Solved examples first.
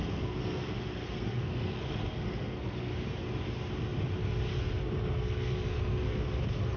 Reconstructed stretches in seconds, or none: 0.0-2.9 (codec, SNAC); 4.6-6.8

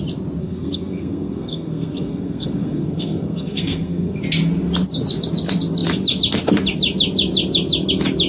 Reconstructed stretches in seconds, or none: 0.4-4.2 (codec, SNAC)

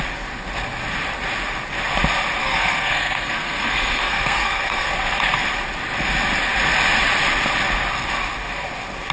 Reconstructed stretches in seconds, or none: 2.4-4.9 (codec, SNAC)

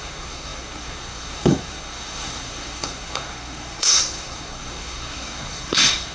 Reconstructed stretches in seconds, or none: 0.0-6.1 (codec, SNAC)

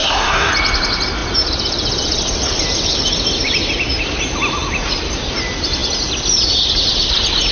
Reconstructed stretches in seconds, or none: 0.0-0.5 (codec, SNAC)

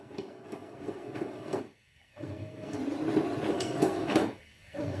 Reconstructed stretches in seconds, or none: 0.0-2.8 (codec, SNAC); 3.5-5.0